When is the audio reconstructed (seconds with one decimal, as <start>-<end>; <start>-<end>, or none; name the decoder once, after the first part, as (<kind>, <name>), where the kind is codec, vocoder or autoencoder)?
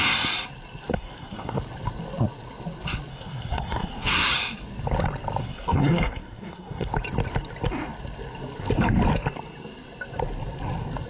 0.9-1.6 (codec, SNAC); 3.1-4.3; 5.4-6.9